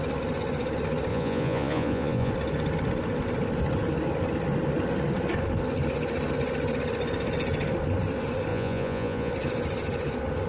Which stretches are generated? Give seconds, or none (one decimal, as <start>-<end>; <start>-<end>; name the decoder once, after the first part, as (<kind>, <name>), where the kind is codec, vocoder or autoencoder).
1.1-2.3 (vocoder, Vocos); 8.5-9.3